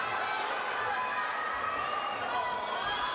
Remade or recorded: recorded